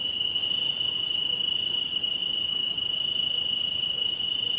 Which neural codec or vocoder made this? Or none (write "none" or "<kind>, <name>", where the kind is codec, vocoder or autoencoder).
none